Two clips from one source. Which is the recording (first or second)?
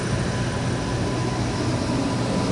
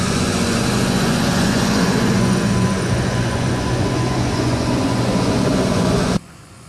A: first